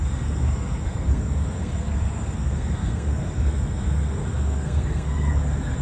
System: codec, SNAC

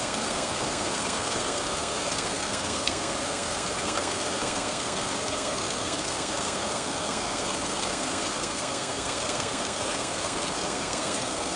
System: codec, SNAC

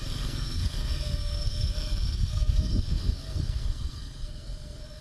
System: codec, SNAC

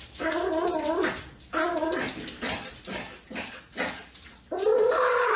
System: none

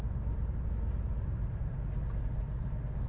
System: none